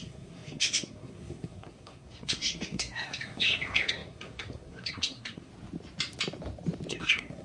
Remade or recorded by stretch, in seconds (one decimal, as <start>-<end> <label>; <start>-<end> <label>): 0.0-5.5 remade; 5.5-6.9 recorded; 6.9-7.4 remade